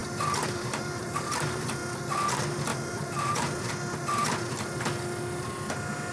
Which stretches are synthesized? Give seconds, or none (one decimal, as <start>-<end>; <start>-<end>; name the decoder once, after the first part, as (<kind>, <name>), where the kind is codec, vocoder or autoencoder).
0.0-1.7 (vocoder, BigVGAN v2); 2.7-3.7; 4.2-4.7